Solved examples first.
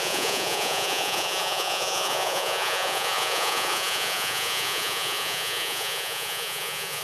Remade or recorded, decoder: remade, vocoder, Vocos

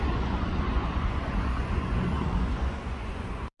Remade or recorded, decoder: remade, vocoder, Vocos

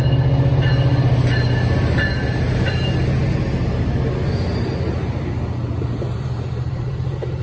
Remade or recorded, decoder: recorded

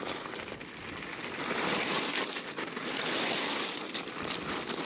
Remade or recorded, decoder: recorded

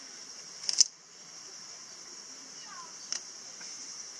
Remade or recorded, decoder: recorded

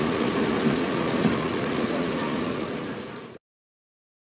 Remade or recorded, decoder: remade, vocoder, Vocos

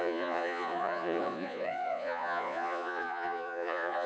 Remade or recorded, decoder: remade, vocoder, Vocos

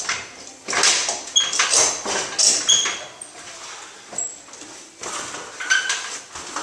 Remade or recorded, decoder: recorded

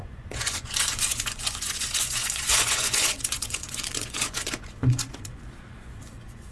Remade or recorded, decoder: remade, vocoder, Vocos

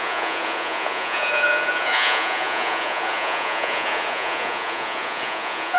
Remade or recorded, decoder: remade, vocoder, Vocos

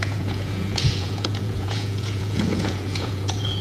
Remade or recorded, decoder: remade, vocoder, Vocos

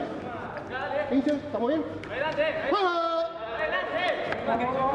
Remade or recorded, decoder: recorded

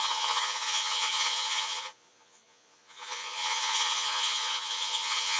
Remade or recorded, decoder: remade, vocoder, Vocos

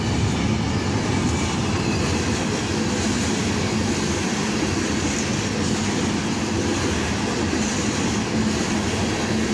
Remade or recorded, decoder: recorded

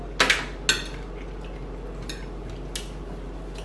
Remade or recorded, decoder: recorded